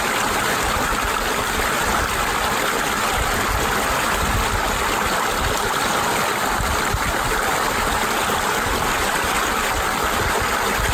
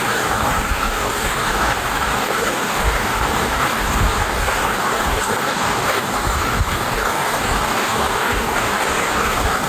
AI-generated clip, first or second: second